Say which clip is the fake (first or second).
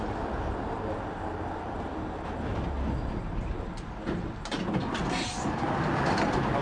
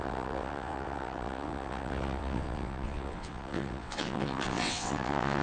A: second